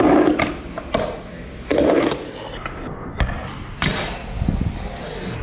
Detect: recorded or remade recorded